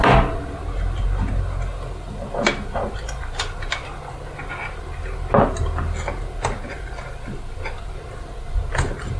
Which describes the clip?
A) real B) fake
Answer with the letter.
A